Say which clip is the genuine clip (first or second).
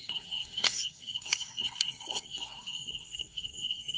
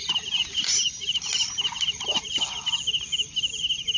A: second